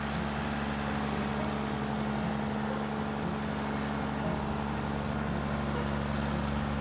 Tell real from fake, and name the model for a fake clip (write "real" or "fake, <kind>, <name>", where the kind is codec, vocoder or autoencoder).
real